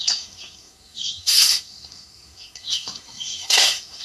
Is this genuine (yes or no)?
no